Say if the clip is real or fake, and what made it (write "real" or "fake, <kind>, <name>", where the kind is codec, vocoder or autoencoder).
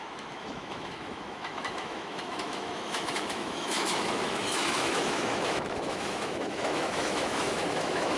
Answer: fake, autoencoder, DAC-VAE